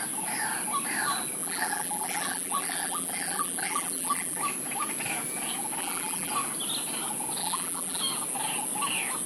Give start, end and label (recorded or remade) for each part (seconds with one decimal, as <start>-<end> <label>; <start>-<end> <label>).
0.0-1.4 recorded; 1.4-4.4 remade; 4.4-5.8 recorded; 5.8-6.3 remade; 6.3-7.4 recorded; 7.4-8.0 remade; 8.0-9.3 recorded